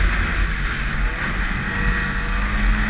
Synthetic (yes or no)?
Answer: no